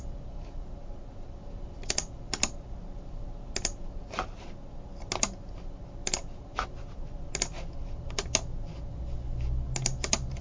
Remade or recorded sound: recorded